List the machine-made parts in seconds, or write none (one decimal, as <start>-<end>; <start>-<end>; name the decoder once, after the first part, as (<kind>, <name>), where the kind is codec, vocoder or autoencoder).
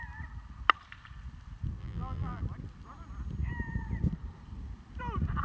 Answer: 1.8-2.4 (vocoder, BigVGAN v2)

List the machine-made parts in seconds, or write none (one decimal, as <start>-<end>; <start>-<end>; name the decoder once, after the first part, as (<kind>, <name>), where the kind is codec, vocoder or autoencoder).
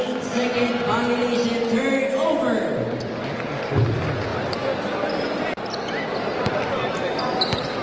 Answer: 4.3-5.8 (vocoder, BigVGAN v2)